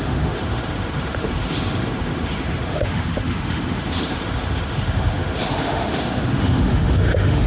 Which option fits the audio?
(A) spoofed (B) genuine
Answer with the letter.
A